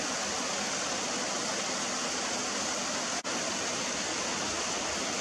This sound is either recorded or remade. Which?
recorded